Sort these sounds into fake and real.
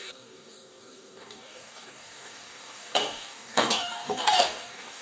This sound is fake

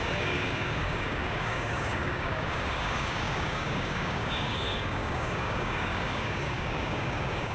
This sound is fake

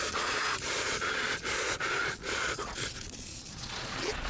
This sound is fake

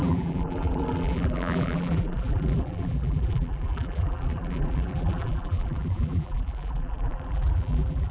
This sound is fake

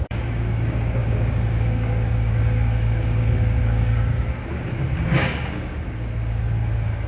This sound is fake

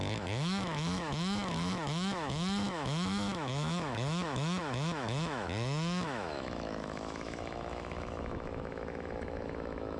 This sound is fake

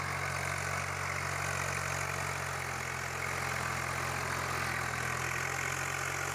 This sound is real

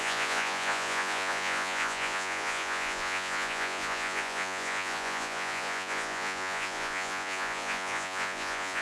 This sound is fake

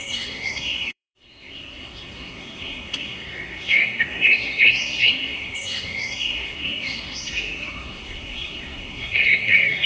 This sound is fake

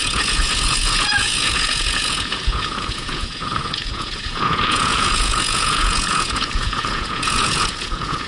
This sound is fake